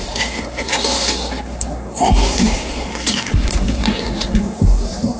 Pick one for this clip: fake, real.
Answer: fake